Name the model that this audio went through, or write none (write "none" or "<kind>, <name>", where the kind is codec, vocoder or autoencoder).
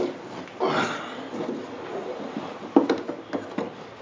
none